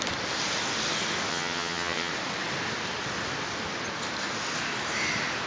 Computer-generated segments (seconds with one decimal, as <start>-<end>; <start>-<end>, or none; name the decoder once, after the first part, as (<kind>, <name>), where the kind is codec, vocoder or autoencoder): 1.3-2.1 (vocoder, HiFi-GAN)